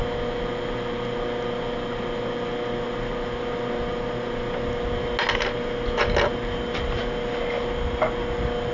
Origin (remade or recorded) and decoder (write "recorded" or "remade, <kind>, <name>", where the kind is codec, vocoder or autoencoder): recorded